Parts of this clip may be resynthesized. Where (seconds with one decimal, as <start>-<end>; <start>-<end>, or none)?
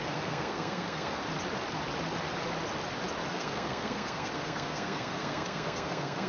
0.0-1.2; 3.3-6.3